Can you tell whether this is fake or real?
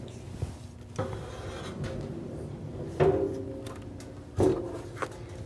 real